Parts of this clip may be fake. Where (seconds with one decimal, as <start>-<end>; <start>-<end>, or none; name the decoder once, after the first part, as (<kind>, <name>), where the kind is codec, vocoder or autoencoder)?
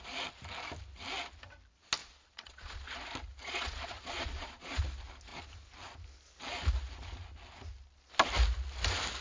2.0-3.0 (vocoder, Vocos); 3.4-4.8